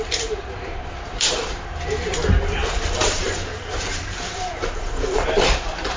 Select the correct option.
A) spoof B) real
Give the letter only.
A